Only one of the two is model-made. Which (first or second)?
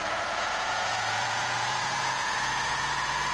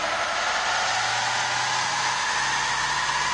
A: first